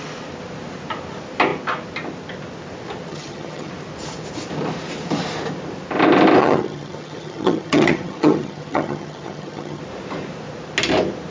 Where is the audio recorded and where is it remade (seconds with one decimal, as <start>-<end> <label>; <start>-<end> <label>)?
0.0-3.1 recorded; 3.1-3.7 remade; 3.7-6.4 recorded; 6.4-9.8 remade; 9.8-11.3 recorded